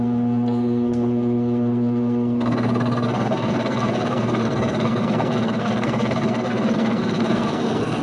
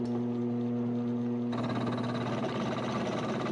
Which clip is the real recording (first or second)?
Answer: second